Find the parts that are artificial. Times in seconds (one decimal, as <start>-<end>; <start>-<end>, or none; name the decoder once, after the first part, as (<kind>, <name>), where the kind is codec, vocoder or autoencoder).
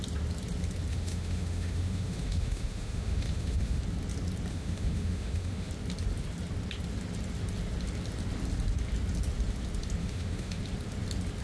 0.9-3.8 (autoencoder, DAC-VAE); 4.5-5.7; 10.0-10.6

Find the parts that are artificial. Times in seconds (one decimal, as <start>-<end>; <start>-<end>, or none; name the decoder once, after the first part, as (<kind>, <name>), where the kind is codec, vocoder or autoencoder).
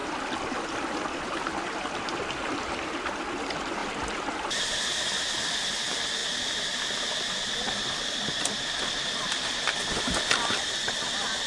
0.0-6.2 (vocoder, BigVGAN v2); 9.9-11.5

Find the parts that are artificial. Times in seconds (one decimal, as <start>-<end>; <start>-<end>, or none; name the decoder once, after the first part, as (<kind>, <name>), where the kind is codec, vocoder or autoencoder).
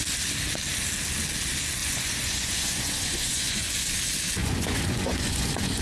1.8-3.9 (vocoder, Vocos); 4.4-5.8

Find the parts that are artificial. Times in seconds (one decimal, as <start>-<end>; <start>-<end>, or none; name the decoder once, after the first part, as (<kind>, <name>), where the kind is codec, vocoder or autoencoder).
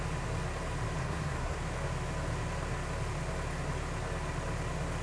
1.0-1.6 (codec, SNAC)